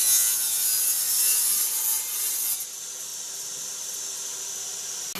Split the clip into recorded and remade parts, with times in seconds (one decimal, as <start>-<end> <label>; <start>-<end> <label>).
0.0-5.2 recorded

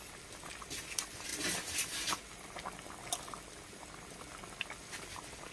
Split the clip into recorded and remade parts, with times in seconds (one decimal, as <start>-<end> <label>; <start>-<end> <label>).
0.0-5.5 recorded